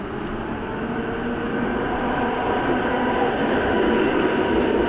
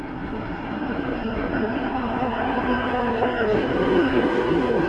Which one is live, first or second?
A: first